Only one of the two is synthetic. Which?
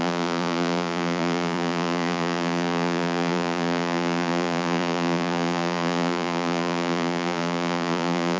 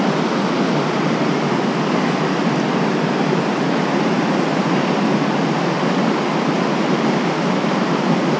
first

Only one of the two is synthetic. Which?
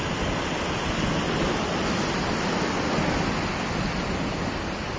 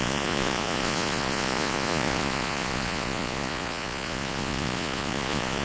second